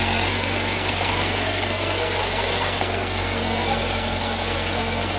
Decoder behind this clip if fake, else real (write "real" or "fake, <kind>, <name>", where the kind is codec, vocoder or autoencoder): fake, codec, SNAC